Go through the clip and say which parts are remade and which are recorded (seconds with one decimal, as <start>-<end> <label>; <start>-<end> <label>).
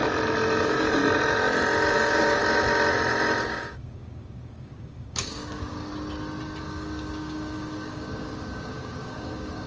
0.0-0.6 recorded; 0.6-1.0 remade; 1.0-1.9 recorded; 1.9-2.4 remade; 2.4-3.4 recorded; 3.4-5.9 remade; 5.9-6.6 recorded; 6.6-9.7 remade